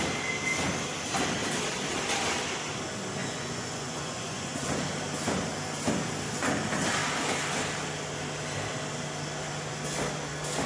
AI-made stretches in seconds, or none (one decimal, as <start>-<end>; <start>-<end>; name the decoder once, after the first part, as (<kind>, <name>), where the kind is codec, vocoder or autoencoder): 3.2-4.7 (vocoder, Vocos)